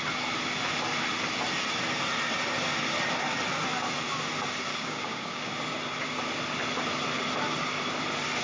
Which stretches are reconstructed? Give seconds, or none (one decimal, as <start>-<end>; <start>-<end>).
4.7-5.4